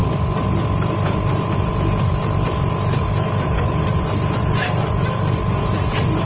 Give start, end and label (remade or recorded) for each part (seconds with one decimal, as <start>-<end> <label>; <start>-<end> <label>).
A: 0.0-6.3 remade